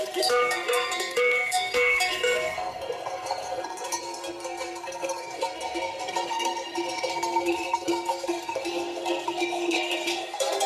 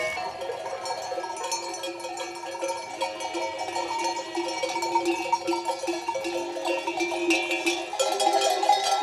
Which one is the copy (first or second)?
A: first